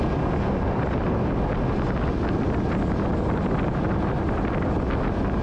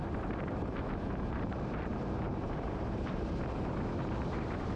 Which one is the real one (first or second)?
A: first